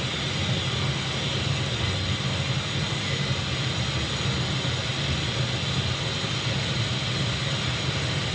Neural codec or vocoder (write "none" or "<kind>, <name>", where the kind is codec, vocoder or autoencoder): none